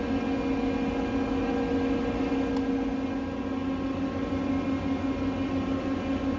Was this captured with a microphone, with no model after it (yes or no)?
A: yes